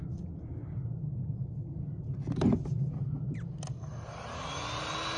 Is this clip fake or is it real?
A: real